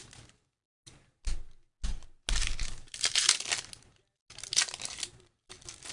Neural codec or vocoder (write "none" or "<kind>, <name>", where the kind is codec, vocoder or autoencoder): none